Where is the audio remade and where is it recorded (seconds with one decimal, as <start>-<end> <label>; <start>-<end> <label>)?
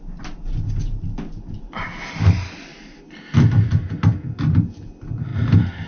0.0-5.9 recorded